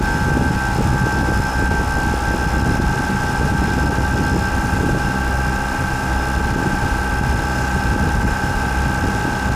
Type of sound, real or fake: real